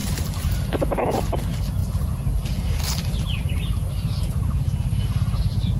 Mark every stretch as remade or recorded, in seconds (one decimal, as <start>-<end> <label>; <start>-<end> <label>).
0.0-5.8 recorded